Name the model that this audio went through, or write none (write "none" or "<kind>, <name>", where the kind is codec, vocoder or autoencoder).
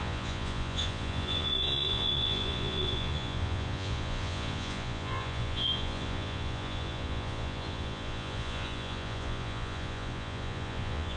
vocoder, Vocos